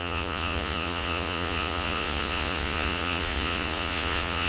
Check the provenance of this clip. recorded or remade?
remade